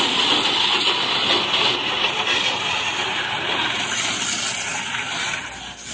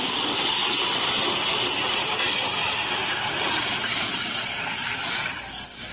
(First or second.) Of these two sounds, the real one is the first